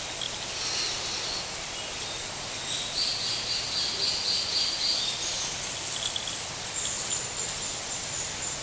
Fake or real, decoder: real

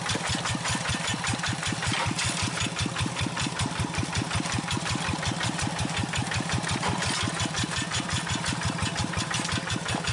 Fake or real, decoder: fake, vocoder, BigVGAN v2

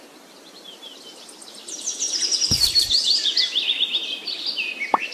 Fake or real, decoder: fake, vocoder, BigVGAN v2